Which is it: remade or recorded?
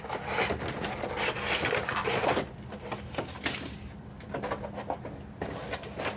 recorded